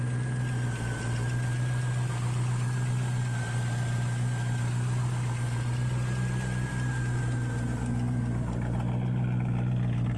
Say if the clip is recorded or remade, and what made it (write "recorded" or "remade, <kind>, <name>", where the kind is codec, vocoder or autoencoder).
recorded